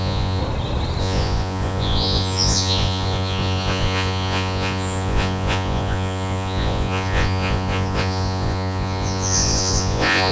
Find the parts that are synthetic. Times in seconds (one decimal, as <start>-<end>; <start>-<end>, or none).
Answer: 0.0-0.4; 1.0-10.3